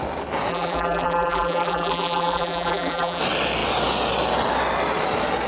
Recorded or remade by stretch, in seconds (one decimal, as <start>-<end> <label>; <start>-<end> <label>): 0.0-0.5 recorded; 0.5-3.2 remade; 3.2-5.5 recorded